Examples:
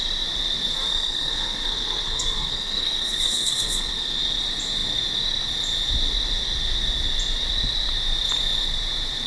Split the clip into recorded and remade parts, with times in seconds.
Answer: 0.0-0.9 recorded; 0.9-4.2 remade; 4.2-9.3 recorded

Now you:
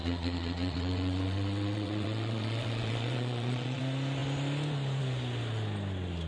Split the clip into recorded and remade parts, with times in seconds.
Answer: 0.0-3.8 remade; 3.8-6.3 recorded